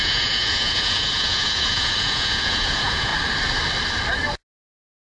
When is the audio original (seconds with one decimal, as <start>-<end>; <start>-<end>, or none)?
3.1-4.6